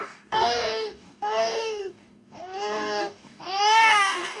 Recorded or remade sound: remade